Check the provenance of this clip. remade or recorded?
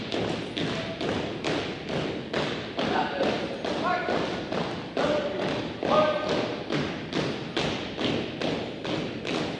recorded